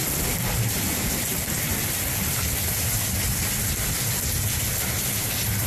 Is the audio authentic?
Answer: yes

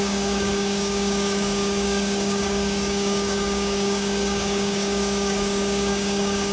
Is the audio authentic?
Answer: no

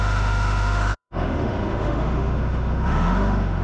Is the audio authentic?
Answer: no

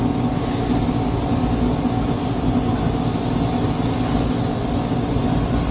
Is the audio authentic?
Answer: yes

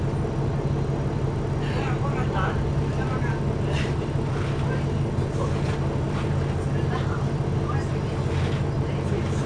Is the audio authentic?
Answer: yes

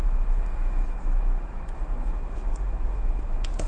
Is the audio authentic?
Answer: no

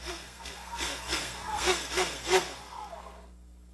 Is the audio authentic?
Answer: no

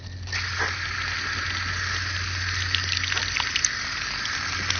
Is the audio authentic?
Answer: yes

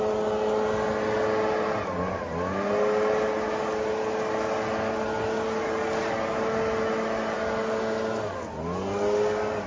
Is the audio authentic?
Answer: yes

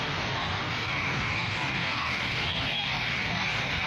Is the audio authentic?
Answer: no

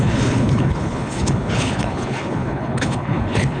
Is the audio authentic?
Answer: no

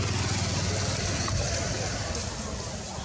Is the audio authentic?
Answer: yes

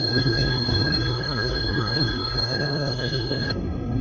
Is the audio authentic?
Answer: no